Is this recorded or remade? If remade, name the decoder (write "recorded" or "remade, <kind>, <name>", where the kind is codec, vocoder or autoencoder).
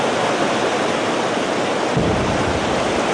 recorded